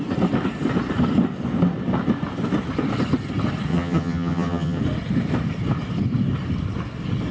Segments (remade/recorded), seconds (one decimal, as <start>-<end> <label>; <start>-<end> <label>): 0.0-3.7 recorded; 3.7-4.8 remade; 4.8-7.3 recorded